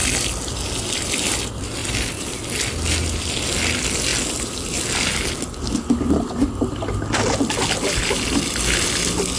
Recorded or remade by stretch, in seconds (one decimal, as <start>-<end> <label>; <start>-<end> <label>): 0.0-1.8 recorded; 1.8-2.5 remade; 2.5-9.4 recorded

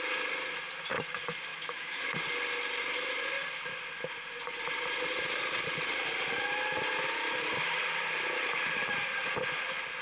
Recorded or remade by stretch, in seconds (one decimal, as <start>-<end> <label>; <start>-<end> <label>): 0.0-1.5 recorded; 1.5-2.0 remade; 2.0-10.0 recorded

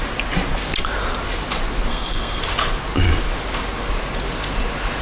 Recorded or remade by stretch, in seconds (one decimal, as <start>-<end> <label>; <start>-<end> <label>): 0.0-1.9 recorded; 1.9-2.4 remade; 2.4-5.0 recorded

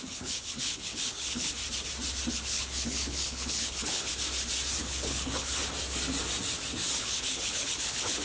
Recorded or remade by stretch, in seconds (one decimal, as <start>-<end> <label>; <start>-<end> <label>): 0.0-1.6 remade; 1.6-2.3 recorded; 2.3-4.1 remade; 4.1-4.8 recorded; 4.8-5.6 remade; 5.6-7.0 recorded; 7.0-8.2 remade

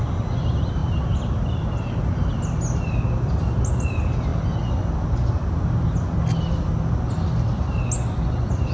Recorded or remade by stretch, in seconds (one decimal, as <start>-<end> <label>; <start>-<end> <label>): 0.0-8.7 recorded

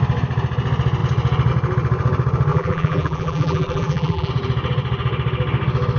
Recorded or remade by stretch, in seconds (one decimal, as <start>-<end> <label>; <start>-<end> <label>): 0.0-2.5 recorded; 2.5-4.3 remade; 4.3-6.0 recorded

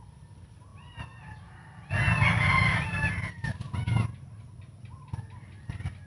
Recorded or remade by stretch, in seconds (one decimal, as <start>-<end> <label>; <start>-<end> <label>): 0.0-6.1 recorded